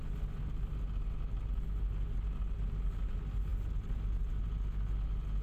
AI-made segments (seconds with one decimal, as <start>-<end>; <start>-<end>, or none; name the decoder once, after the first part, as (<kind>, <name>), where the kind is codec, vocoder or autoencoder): none